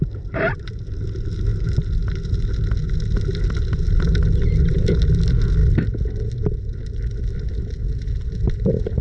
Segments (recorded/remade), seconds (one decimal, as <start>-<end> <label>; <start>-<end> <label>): 0.0-9.0 recorded